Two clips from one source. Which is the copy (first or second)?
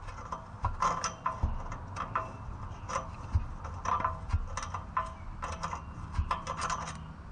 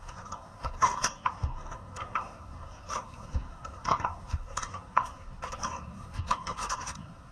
second